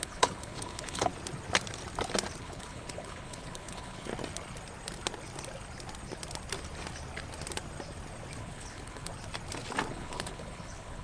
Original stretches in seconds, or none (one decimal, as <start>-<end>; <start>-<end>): 1.1-2.4; 4.1-8.4; 9.1-9.9